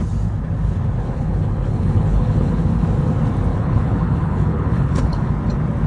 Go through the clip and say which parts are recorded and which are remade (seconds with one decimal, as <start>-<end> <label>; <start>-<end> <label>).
0.0-1.0 recorded; 1.0-2.7 remade; 2.7-3.5 recorded; 3.5-5.3 remade; 5.3-5.9 recorded